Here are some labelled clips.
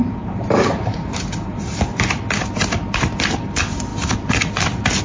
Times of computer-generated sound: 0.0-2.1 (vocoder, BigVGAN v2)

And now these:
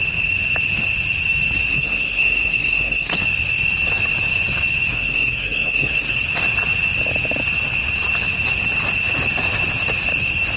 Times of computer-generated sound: 1.7-3.1 (codec, SNAC); 4.9-6.2

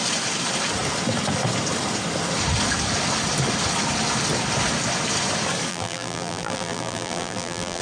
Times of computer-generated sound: 5.7-7.8 (vocoder, BigVGAN v2)